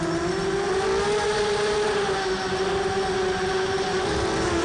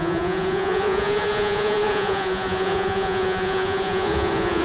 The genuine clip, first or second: first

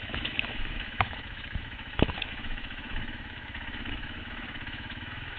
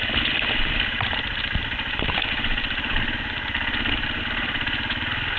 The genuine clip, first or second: second